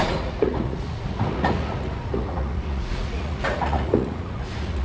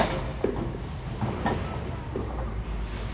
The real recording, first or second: second